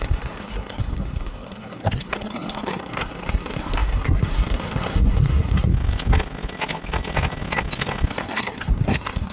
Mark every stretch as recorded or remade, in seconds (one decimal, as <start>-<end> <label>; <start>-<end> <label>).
0.0-5.7 remade; 5.7-8.1 recorded; 8.1-9.3 remade